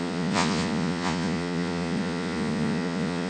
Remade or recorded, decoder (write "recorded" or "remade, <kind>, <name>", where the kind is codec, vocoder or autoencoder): remade, vocoder, Vocos